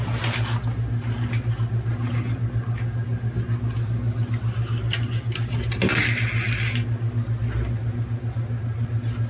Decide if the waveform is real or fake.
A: real